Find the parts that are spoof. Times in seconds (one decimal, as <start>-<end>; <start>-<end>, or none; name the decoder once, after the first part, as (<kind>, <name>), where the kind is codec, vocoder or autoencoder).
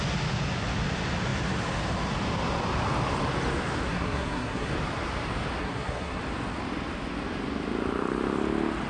3.9-4.7 (codec, SNAC); 5.6-6.2